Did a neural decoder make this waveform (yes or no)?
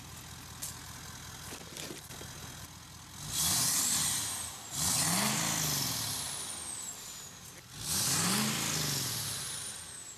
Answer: no